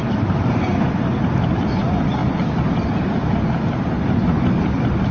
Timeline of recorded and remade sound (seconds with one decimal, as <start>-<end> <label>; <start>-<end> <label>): 0.0-5.1 recorded